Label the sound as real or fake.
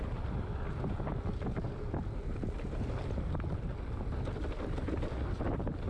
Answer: real